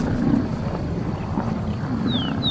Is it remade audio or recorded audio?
recorded